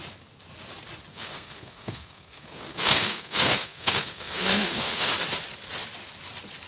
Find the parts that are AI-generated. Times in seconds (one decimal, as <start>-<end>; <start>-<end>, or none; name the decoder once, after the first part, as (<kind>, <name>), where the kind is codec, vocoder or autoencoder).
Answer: 1.1-5.1 (codec, SNAC)